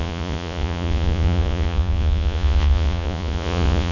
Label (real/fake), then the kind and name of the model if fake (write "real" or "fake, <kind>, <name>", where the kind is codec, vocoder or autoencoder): fake, vocoder, Vocos